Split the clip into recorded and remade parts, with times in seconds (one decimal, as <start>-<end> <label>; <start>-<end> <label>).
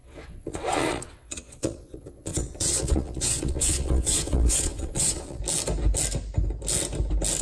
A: 0.0-5.4 remade; 5.4-7.4 recorded